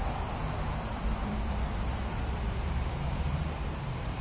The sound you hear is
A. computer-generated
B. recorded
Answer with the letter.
A